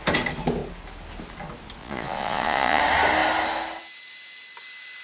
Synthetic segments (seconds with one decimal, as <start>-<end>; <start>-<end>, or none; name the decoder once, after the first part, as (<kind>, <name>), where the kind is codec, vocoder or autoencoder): 1.8-2.8 (vocoder, Vocos)